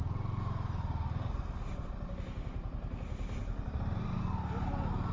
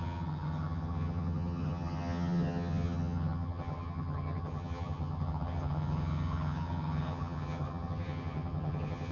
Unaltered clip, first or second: first